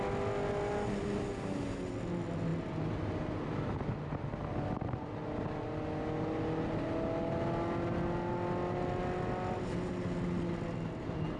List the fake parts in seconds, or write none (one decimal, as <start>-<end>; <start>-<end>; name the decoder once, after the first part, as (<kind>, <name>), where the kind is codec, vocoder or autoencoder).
none